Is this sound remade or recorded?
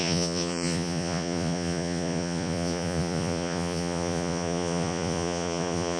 remade